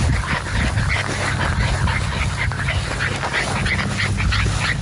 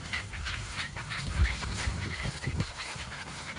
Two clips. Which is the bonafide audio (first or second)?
first